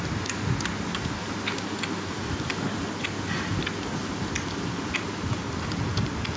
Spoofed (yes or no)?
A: no